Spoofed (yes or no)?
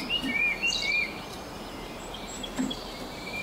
yes